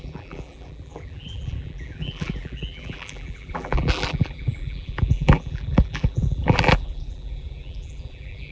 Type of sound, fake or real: fake